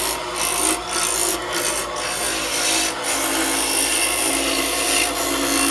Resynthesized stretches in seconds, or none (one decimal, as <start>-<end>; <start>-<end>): none